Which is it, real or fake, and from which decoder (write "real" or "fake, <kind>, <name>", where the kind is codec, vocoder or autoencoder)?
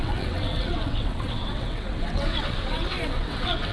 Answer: fake, vocoder, WaveNeXt